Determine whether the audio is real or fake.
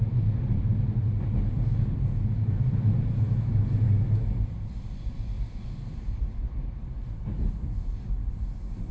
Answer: real